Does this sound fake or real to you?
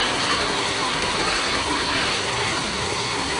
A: fake